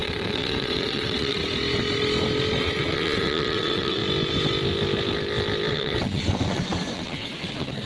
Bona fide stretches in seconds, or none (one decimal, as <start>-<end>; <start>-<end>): 1.4-2.6; 4.0-5.7